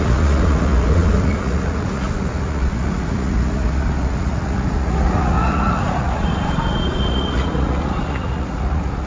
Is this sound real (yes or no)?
no